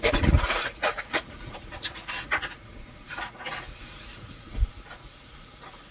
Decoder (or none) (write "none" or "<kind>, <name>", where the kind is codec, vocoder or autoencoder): vocoder, Vocos